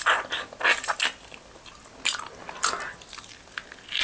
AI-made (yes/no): no